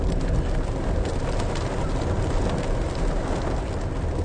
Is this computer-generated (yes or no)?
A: no